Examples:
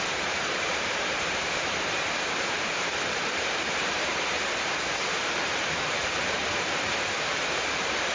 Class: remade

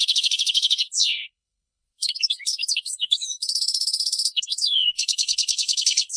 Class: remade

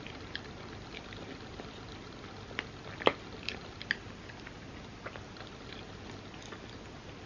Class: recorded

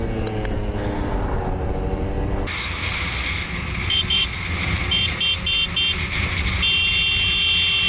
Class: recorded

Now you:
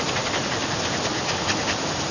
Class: recorded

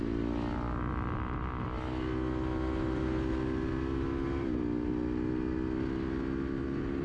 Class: recorded